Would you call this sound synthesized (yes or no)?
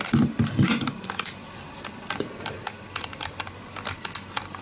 no